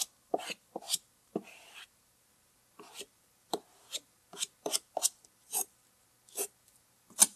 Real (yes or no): no